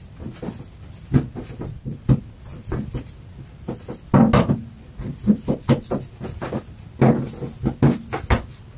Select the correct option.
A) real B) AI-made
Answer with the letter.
A